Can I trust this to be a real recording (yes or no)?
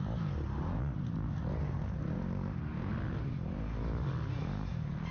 yes